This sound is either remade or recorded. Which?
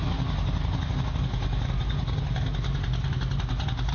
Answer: recorded